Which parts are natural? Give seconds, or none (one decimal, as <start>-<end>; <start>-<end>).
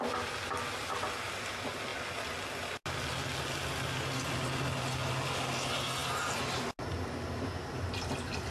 0.0-8.5